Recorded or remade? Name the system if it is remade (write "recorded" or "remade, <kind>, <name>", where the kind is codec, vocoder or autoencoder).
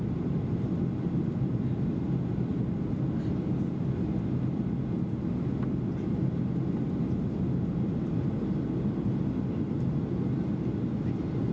recorded